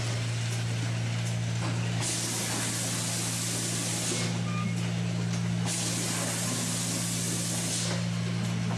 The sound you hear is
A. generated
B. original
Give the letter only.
B